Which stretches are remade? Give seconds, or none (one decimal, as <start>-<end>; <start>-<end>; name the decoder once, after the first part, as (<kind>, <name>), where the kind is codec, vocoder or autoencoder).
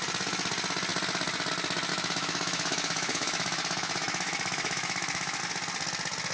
1.9-5.4 (autoencoder, DAC-VAE)